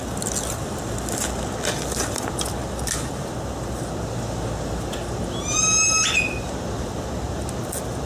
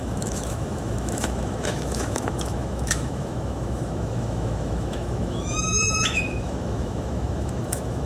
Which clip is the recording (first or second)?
first